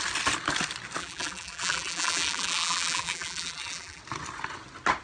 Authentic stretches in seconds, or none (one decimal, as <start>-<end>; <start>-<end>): 0.0-1.0; 4.0-5.0